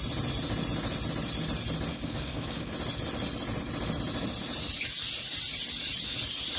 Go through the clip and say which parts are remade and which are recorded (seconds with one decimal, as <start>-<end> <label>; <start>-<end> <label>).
0.0-1.9 recorded; 1.9-2.7 remade; 2.7-6.6 recorded